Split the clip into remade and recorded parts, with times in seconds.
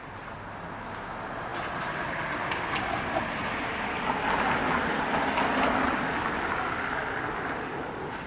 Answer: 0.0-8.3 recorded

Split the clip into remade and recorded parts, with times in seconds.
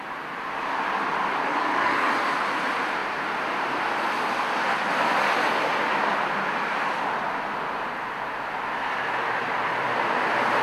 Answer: 0.0-1.5 recorded; 1.5-2.1 remade; 2.1-10.6 recorded